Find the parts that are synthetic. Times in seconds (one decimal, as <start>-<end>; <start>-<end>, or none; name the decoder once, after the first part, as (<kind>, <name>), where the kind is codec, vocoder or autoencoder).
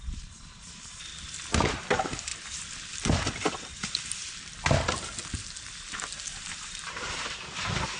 0.0-1.1 (vocoder, BigVGAN v2); 1.8-2.3; 2.9-4.2; 6.4-8.0